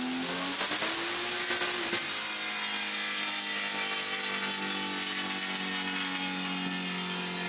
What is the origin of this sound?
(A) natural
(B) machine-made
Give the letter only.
A